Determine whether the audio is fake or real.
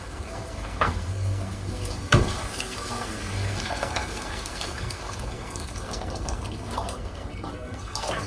fake